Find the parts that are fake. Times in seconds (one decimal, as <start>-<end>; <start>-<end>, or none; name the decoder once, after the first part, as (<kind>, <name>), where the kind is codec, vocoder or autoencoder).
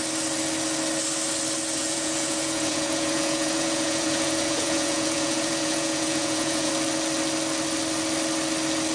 1.8-6.7 (vocoder, Vocos)